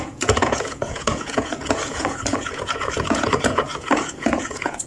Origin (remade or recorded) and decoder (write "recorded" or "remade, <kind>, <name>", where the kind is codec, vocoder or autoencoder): remade, vocoder, Vocos